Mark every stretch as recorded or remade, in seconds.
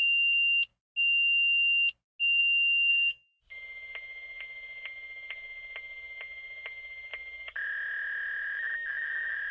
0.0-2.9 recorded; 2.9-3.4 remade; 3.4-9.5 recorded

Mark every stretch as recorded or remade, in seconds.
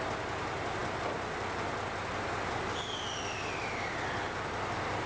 0.0-5.1 recorded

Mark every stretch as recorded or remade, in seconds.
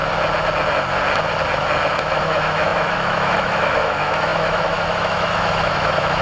0.0-2.0 recorded; 2.0-6.2 remade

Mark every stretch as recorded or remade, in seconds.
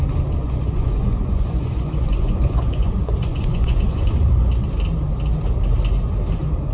0.0-0.4 recorded; 0.4-4.4 remade; 4.4-6.7 recorded